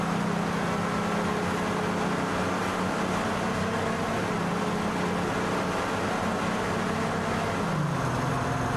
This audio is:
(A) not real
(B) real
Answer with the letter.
B